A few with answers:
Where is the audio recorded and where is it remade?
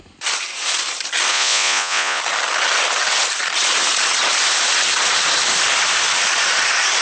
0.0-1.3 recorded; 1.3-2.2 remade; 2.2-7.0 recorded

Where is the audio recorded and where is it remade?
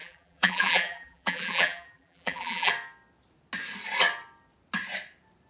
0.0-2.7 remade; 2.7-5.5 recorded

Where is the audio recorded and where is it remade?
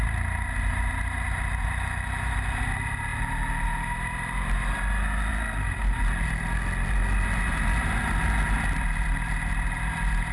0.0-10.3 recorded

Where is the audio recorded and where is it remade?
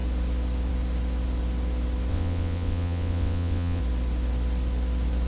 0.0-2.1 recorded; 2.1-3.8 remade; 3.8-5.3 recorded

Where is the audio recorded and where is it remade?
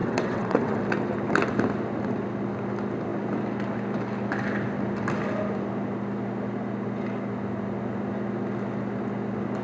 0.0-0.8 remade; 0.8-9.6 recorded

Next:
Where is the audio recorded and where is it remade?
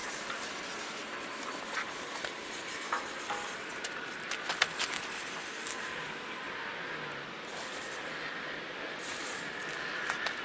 0.0-10.4 recorded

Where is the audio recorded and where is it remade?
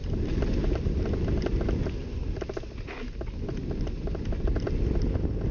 0.0-5.5 recorded